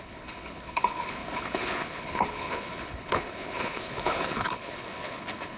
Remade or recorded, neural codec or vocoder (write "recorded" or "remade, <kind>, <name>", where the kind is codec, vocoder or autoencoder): remade, codec, HILCodec